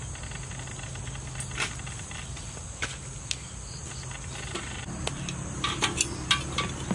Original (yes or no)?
yes